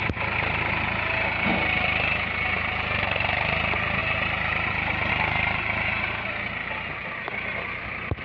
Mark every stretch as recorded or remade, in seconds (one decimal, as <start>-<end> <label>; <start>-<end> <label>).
0.0-8.2 recorded